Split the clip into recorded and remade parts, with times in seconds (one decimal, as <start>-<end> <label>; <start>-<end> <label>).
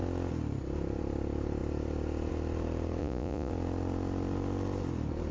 0.0-3.0 recorded; 3.0-3.5 remade; 3.5-5.3 recorded